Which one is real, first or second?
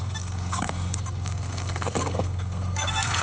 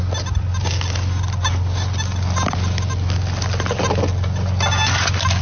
second